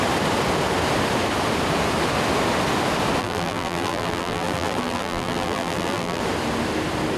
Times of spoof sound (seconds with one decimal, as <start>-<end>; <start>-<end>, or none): 3.2-6.2